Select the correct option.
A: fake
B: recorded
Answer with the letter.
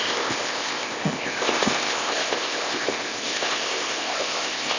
A